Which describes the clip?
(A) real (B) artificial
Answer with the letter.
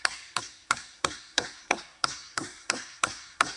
B